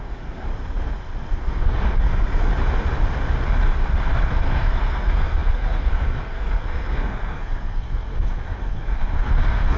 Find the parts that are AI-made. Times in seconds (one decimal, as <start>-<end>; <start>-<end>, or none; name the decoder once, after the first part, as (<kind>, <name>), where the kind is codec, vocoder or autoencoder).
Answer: 0.0-0.5 (codec, SNAC); 1.4-2.5; 4.1-9.8